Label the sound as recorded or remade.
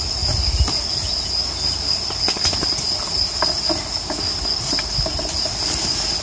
recorded